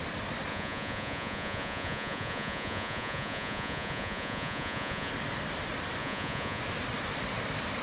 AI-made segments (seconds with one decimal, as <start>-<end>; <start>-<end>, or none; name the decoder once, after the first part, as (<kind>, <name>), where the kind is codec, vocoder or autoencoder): 0.5-5.1 (vocoder, Vocos); 6.0-6.6